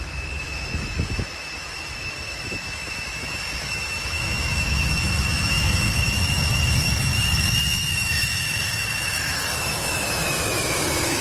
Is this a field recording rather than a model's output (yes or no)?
no